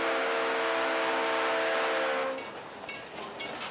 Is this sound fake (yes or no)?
no